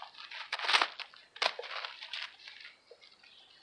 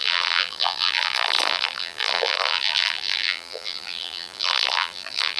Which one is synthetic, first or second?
second